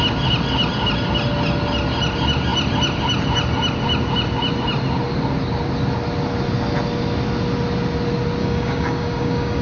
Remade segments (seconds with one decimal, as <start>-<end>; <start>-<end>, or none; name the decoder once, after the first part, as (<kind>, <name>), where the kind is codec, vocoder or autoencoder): 8.4-9.6 (codec, DAC)